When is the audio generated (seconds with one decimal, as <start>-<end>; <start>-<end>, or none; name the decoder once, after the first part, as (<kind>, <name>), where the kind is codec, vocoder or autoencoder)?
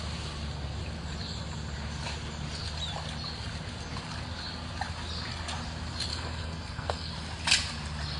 6.1-7.1 (codec, SNAC)